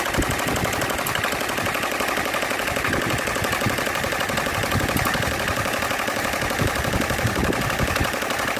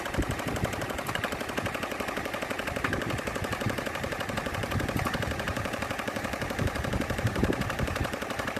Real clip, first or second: first